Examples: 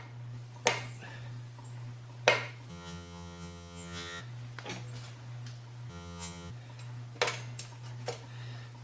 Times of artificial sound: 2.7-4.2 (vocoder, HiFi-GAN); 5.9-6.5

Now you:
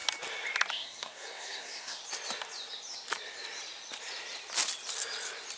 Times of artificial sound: 0.7-2.0 (codec, SNAC)

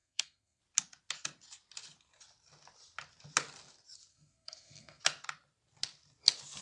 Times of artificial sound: 0.0-0.6 (codec, SNAC); 4.1-5.0

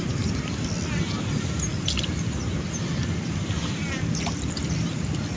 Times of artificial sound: none

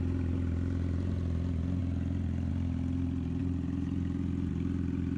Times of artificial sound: none

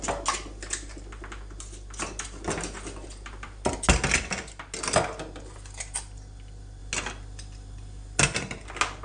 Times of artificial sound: none

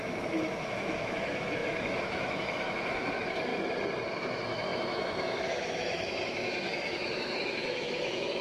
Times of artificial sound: 0.0-3.5 (autoencoder, DAC-VAE); 4.2-8.4